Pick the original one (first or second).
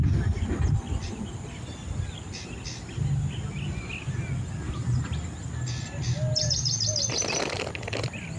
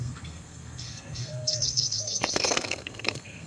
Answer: first